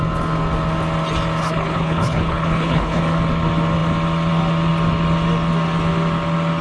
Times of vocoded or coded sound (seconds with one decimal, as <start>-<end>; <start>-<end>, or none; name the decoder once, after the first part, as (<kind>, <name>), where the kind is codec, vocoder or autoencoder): 1.4-3.0 (codec, HILCodec)